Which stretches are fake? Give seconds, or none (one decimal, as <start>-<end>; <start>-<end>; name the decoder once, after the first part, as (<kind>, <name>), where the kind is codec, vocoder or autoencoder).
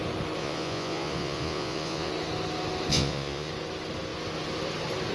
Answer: 0.4-2.1 (vocoder, Vocos); 2.9-3.5